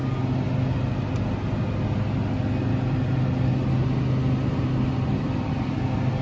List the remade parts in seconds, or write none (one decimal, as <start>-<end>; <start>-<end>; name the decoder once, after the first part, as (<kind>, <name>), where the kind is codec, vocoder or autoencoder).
none

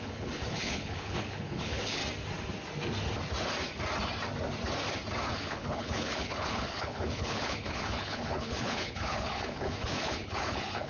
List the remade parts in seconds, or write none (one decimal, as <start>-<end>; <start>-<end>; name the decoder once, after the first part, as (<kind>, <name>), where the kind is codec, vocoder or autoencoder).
0.0-2.0 (codec, HILCodec); 5.3-10.9

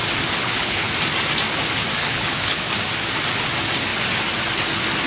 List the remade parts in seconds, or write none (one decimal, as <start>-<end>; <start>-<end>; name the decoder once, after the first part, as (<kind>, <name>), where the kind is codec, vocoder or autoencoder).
0.4-0.9 (codec, HILCodec); 2.0-2.6